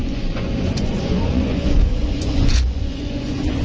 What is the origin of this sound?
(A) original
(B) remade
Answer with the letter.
B